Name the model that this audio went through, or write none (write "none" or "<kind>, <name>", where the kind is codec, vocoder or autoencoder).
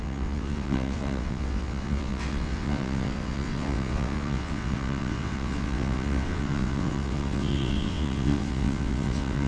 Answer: vocoder, WaveNeXt